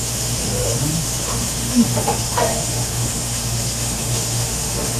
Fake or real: fake